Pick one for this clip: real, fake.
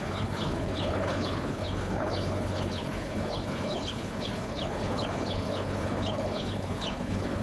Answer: fake